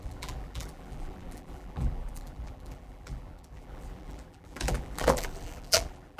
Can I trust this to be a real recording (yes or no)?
no